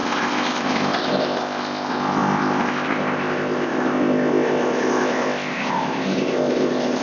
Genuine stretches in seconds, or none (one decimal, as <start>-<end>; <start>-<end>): none